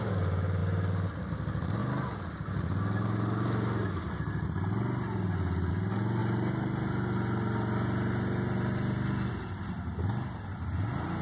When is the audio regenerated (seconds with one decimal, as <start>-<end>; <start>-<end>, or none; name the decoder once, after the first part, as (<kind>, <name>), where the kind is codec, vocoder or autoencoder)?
none